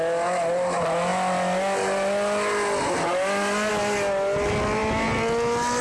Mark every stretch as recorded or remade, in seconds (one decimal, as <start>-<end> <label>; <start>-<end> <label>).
0.0-5.8 recorded